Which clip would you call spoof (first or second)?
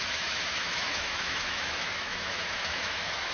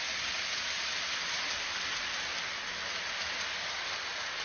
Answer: first